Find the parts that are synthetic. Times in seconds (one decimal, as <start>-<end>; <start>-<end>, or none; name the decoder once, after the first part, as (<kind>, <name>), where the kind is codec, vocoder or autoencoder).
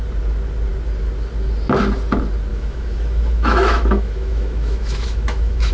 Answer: 2.5-5.7 (autoencoder, DAC-VAE)